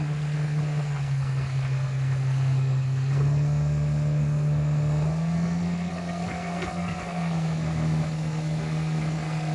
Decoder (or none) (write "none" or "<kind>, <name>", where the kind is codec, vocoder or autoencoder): codec, SNAC